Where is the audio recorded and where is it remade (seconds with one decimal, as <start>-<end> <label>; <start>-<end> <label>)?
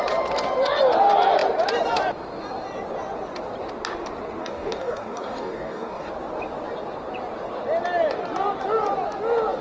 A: 0.0-4.4 recorded; 4.4-6.1 remade; 6.1-9.6 recorded